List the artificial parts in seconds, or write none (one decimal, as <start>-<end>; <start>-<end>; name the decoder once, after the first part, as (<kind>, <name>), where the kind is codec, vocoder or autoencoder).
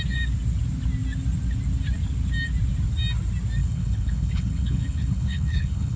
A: 3.6-6.0 (codec, HILCodec)